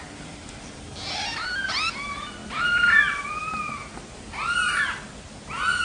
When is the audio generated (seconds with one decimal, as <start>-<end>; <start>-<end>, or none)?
none